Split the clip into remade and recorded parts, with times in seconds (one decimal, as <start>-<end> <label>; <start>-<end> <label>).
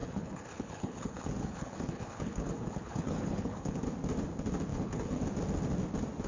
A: 0.0-3.8 remade; 3.8-4.7 recorded; 4.7-5.2 remade; 5.2-6.3 recorded